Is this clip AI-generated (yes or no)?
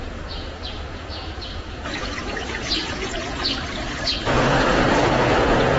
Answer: yes